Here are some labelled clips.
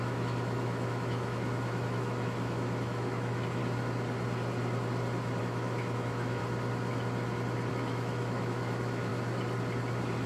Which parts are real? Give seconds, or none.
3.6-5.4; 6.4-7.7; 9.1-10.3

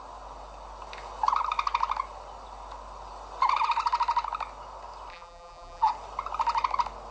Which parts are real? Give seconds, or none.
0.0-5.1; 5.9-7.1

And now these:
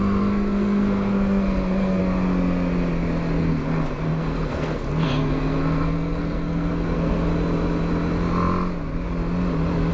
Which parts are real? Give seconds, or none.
2.0-3.4; 7.3-9.9

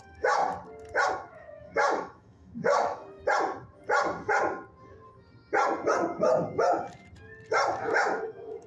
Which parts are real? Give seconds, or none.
0.4-1.1; 3.0-7.7